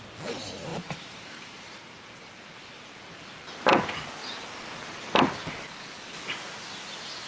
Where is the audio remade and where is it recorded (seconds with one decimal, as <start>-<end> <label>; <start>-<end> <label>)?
0.0-0.7 recorded; 0.7-2.6 remade; 2.6-4.2 recorded; 4.2-5.5 remade; 5.5-7.3 recorded